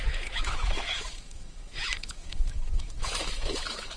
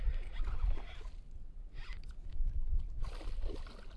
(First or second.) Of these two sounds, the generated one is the first